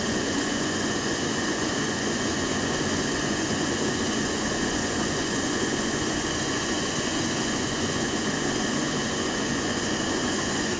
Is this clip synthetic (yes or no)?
yes